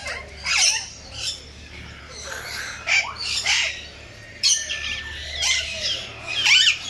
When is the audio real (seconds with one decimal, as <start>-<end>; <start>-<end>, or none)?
2.0-3.2; 6.3-6.9